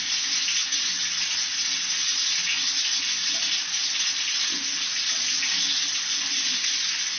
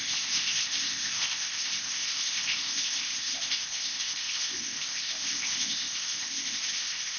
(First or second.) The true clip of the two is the first